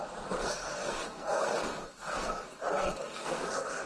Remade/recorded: remade